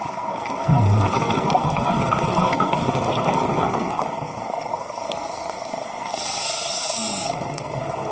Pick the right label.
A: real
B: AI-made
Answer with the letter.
B